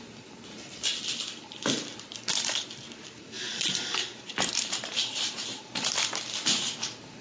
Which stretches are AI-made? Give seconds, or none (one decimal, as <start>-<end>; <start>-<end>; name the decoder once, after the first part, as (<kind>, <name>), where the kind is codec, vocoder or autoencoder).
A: 3.5-5.9 (vocoder, BigVGAN v2)